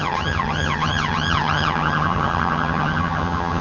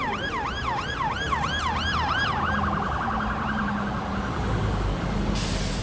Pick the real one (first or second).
second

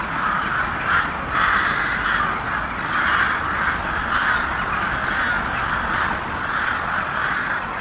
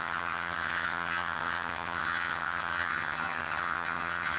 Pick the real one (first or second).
first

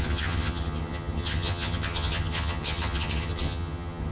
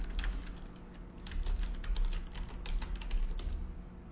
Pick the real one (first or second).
second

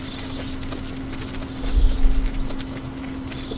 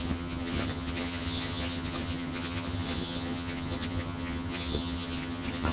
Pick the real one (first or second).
first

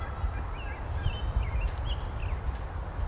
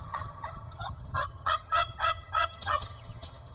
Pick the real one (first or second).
first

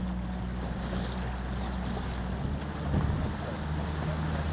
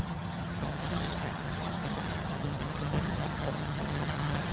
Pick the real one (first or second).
first